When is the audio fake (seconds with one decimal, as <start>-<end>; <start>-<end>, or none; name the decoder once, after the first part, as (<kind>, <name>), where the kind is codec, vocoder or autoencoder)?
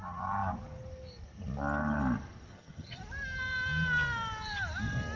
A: 2.5-3.0 (vocoder, HiFi-GAN)